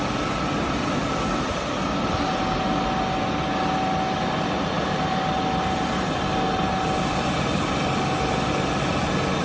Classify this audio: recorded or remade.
recorded